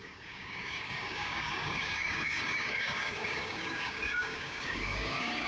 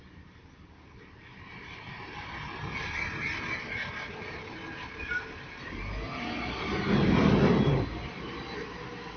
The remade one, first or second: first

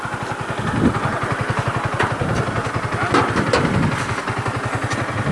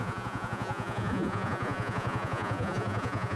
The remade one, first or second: second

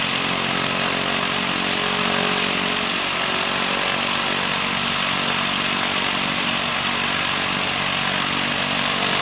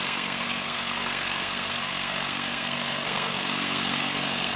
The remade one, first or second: second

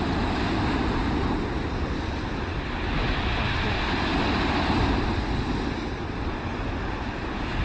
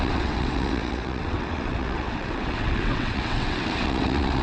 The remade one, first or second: second